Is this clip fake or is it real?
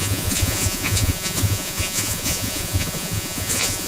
fake